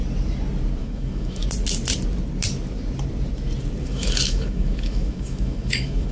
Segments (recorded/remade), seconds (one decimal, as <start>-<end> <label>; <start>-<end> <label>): 0.0-0.8 recorded; 0.8-1.4 remade; 1.4-3.8 recorded; 3.8-6.1 remade